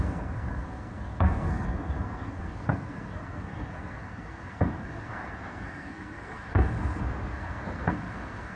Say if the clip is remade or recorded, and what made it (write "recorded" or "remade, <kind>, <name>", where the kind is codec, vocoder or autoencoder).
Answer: remade, codec, SNAC